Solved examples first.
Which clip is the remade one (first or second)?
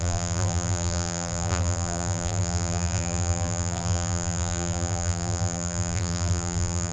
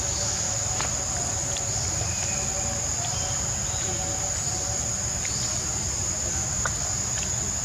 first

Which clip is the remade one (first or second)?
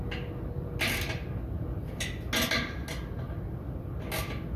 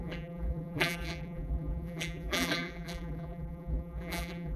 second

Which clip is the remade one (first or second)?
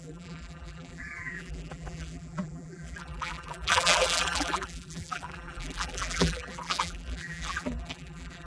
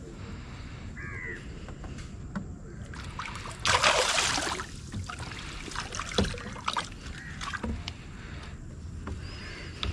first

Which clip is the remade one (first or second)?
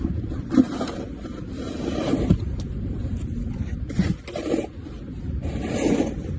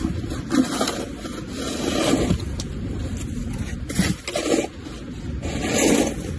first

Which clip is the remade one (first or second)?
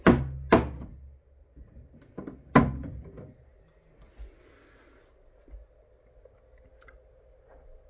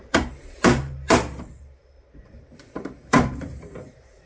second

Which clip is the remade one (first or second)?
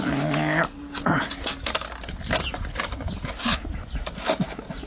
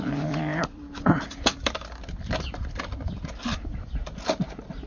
second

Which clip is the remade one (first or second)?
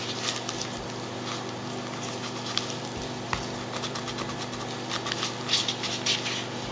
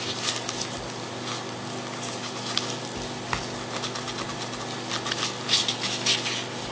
first